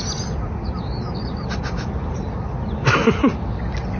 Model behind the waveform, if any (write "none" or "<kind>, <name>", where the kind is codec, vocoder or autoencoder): none